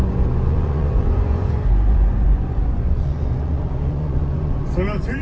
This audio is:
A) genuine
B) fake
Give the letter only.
B